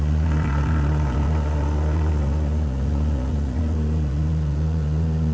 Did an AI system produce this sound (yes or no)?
yes